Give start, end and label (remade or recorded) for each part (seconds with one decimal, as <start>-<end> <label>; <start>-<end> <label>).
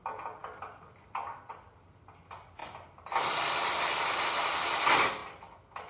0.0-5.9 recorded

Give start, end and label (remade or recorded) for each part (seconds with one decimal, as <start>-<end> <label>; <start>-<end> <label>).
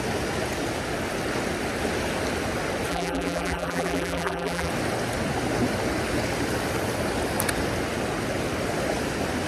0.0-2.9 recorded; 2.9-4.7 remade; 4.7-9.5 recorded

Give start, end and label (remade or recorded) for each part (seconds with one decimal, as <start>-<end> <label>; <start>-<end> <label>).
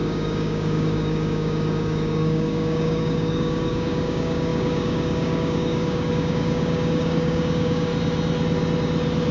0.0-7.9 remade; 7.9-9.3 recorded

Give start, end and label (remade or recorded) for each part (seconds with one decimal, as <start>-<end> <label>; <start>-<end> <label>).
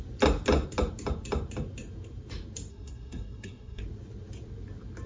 0.0-2.7 recorded; 2.7-3.8 remade; 3.8-5.1 recorded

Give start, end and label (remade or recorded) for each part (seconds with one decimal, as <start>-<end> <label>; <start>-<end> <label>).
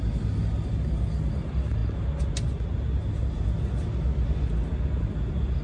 0.0-5.6 recorded